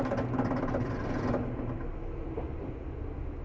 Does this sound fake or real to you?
real